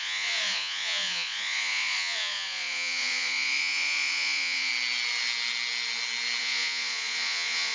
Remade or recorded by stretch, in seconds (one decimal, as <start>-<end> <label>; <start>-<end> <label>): 0.0-4.7 remade; 4.7-6.4 recorded; 6.4-7.7 remade